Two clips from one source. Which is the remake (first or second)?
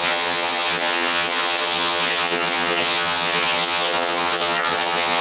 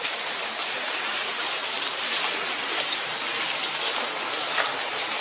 first